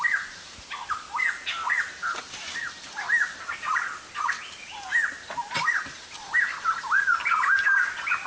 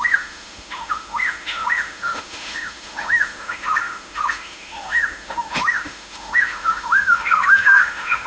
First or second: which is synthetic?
second